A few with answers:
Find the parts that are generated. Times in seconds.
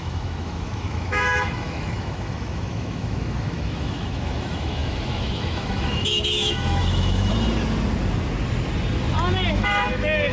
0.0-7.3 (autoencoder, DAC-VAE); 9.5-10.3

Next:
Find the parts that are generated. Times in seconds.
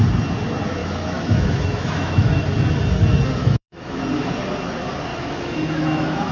0.8-2.4 (autoencoder, DAC-VAE); 3.4-4.0; 5.1-6.3